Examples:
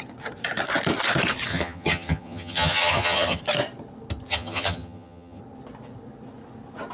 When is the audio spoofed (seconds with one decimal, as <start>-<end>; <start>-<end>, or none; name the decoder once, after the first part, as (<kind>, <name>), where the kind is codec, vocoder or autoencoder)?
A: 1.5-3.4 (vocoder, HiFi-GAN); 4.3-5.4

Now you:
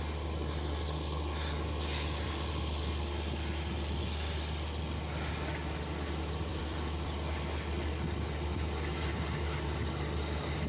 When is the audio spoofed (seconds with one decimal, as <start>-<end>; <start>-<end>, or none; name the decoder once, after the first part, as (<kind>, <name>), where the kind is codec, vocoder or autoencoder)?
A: 6.5-7.1 (vocoder, BigVGAN v2)

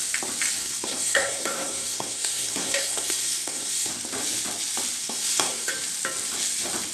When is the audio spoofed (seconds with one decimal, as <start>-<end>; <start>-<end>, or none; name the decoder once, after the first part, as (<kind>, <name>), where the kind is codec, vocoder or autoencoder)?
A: 0.6-3.9 (codec, SNAC); 5.0-5.7

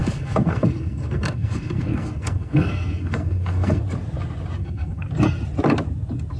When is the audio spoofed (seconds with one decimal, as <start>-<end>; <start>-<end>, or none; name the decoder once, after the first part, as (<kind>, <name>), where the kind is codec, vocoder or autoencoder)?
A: 0.0-3.8 (codec, SNAC); 4.6-5.1